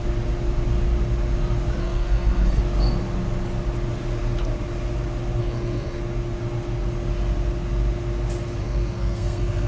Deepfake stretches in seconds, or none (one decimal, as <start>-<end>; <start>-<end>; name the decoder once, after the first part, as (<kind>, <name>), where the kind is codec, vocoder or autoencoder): 1.8-2.6 (codec, SNAC); 5.4-6.0; 8.6-9.7